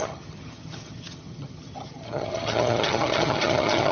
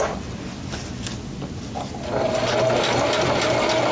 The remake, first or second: first